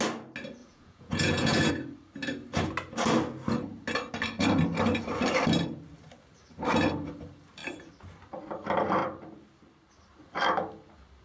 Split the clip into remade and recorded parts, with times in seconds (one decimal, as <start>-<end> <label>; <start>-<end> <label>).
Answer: 0.0-0.6 recorded; 0.6-1.7 remade; 1.7-11.2 recorded